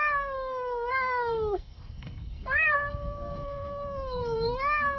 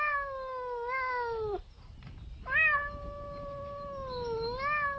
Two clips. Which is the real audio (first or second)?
second